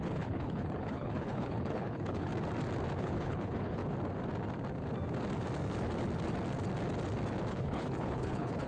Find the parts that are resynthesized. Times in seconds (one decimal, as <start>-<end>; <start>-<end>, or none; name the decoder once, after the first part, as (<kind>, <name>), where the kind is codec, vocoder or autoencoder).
0.0-2.3 (codec, HILCodec); 3.0-3.8; 7.5-8.7